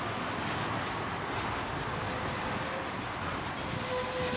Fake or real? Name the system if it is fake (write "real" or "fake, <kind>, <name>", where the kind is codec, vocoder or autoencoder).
real